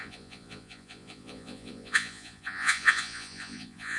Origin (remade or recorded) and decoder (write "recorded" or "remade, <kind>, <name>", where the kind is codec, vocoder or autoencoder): remade, vocoder, Vocos